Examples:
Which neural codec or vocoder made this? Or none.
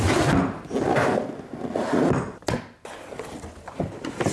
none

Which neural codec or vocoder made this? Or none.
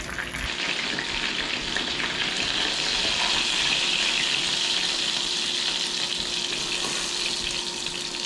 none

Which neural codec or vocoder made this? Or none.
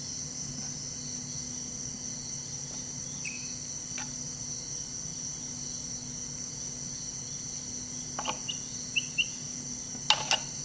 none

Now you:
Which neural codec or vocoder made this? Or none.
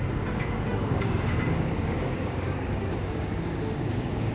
codec, DAC